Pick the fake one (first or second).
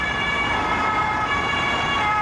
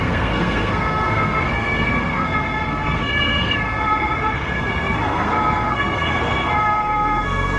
second